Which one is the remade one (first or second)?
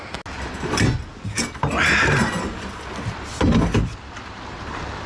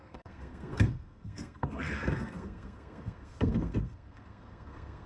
second